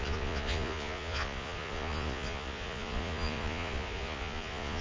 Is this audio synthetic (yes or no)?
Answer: yes